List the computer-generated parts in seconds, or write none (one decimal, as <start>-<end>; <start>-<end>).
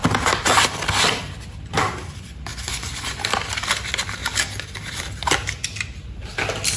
2.5-3.2